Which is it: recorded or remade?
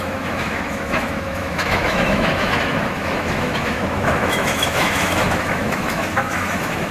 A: remade